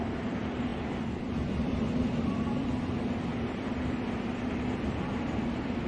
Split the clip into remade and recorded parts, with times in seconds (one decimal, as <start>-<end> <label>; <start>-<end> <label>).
0.0-5.9 remade